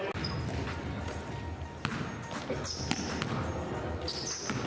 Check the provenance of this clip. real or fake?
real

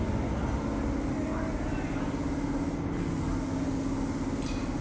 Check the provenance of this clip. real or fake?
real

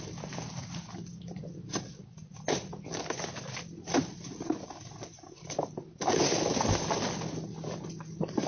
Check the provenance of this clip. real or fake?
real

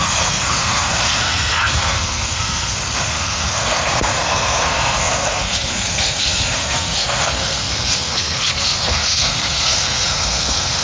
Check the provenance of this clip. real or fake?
fake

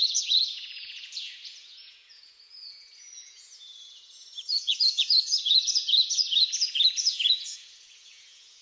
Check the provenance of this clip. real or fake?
fake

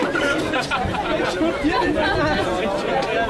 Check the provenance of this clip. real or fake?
real